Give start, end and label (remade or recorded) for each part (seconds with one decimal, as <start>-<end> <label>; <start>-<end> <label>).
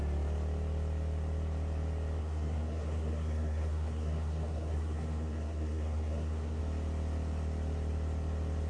0.0-2.2 recorded; 2.2-6.6 remade; 6.6-8.7 recorded